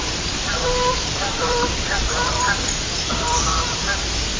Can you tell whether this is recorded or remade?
remade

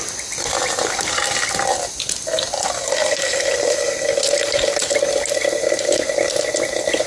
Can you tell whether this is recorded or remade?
recorded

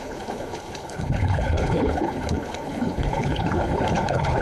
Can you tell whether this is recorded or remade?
remade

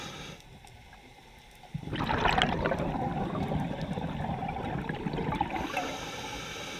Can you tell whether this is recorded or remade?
recorded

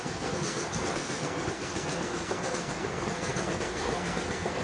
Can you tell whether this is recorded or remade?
remade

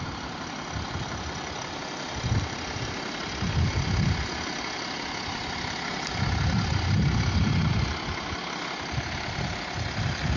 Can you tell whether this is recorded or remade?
recorded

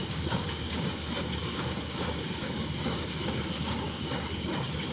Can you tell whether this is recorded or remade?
remade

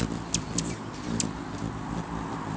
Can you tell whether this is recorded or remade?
recorded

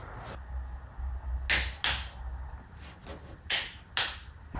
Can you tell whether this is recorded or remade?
recorded